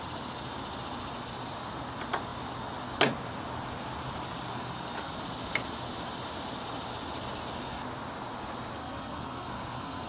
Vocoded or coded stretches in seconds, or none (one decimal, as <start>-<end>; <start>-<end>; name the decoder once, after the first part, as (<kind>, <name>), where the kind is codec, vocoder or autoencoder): 4.5-5.1 (codec, SNAC); 8.8-10.1